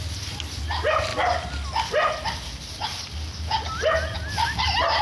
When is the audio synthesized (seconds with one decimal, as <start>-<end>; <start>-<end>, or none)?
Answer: none